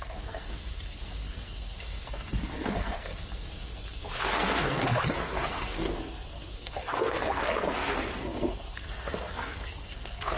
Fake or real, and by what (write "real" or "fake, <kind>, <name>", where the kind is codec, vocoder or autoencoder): fake, codec, SNAC